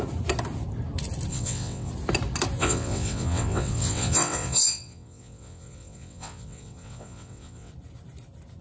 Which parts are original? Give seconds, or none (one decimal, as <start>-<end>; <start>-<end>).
0.0-1.3; 1.9-2.6; 7.7-8.6